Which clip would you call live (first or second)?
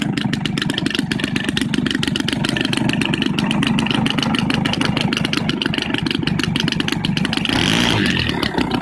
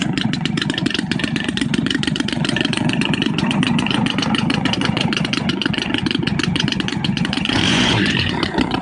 first